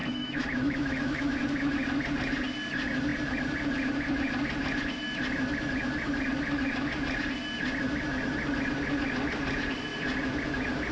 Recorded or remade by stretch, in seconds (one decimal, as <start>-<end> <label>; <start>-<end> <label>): 0.0-1.4 remade; 1.4-10.9 recorded